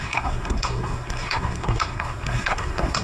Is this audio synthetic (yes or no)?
yes